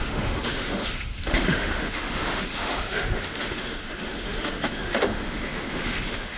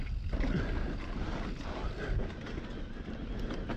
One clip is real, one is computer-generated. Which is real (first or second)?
second